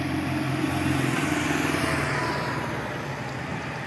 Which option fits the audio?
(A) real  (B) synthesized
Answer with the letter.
A